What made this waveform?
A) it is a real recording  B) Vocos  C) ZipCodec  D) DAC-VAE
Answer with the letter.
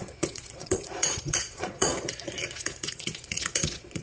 B